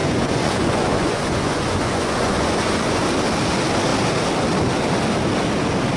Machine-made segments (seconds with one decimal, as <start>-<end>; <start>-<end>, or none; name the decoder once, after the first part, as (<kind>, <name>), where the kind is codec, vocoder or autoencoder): 0.0-3.0 (vocoder, Vocos)